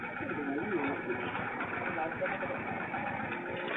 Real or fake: real